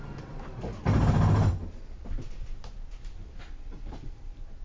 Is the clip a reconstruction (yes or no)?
no